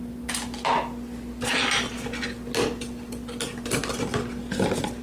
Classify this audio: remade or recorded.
recorded